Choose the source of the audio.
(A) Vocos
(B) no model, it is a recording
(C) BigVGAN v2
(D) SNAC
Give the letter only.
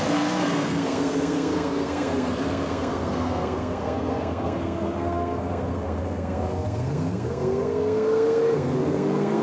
D